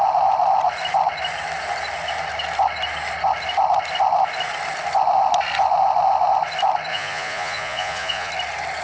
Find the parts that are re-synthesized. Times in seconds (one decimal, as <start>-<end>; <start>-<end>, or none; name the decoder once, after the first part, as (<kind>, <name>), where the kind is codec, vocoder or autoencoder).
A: 6.9-8.3 (vocoder, Vocos)